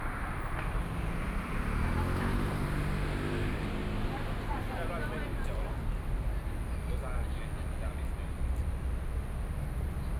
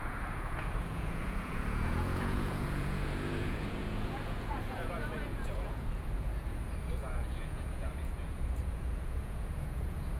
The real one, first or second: first